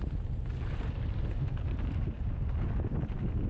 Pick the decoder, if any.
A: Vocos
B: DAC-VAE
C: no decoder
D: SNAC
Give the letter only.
C